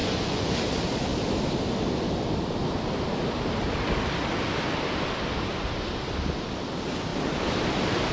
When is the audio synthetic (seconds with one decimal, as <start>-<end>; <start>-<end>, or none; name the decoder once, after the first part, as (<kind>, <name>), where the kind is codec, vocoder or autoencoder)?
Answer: 0.0-0.6 (vocoder, Vocos)